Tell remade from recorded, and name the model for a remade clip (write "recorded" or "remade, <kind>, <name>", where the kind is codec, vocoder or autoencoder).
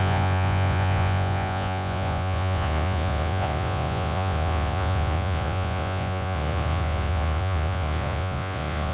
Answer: remade, vocoder, Vocos